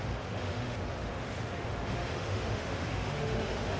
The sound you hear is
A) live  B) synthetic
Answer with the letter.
B